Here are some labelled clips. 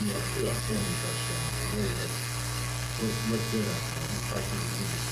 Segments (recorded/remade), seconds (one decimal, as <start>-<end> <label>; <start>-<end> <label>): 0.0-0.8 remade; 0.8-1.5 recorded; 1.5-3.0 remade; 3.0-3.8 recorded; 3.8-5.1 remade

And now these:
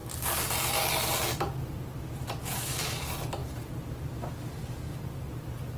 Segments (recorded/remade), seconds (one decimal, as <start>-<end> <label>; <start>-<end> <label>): 0.0-2.4 recorded; 2.4-3.0 remade; 3.0-5.8 recorded

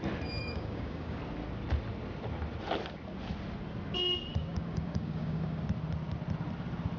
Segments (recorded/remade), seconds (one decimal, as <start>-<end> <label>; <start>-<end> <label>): 0.0-0.4 recorded; 0.4-1.2 remade; 1.2-4.3 recorded; 4.3-5.6 remade; 5.6-7.0 recorded

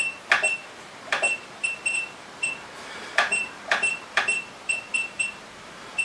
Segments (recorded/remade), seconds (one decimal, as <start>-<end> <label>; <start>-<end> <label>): 0.0-0.6 recorded; 0.6-4.2 remade; 4.2-5.0 recorded; 5.0-6.0 remade

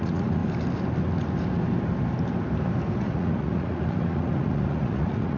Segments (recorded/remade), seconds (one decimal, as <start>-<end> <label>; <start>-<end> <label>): 0.0-0.4 remade; 0.4-2.9 recorded; 2.9-5.4 remade

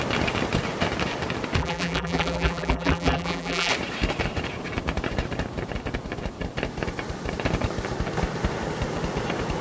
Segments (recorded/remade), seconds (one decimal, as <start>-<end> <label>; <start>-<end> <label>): 0.0-1.6 recorded; 1.6-3.7 remade; 3.7-9.6 recorded

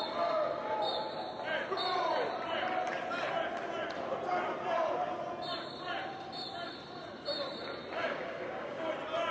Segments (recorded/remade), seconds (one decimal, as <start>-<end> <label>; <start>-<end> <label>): 0.0-8.0 recorded; 8.0-8.9 remade; 8.9-9.3 recorded

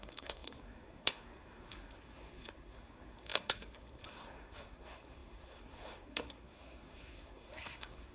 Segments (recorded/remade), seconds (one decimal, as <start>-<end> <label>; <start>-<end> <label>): 0.0-8.1 remade